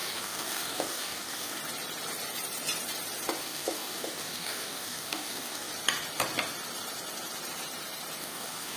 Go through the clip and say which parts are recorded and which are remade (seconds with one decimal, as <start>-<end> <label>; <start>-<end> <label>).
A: 0.0-1.6 remade; 1.6-3.4 recorded; 3.4-5.7 remade; 5.7-8.2 recorded; 8.2-8.8 remade